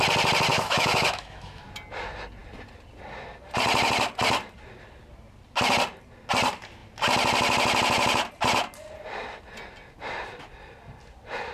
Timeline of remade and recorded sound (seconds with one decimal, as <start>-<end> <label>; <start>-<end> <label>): 0.0-0.5 recorded; 0.5-1.6 remade; 1.6-11.5 recorded